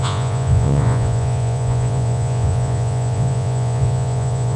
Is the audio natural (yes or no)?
no